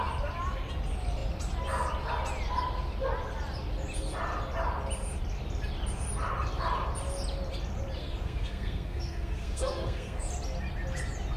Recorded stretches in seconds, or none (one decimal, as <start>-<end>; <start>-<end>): 0.0-8.0; 10.3-11.4